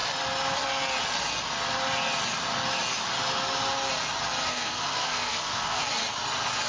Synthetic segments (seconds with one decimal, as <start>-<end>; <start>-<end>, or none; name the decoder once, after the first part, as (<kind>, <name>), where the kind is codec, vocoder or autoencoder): 4.5-5.8 (codec, SNAC)